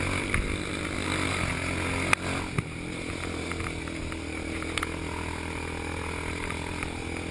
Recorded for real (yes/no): yes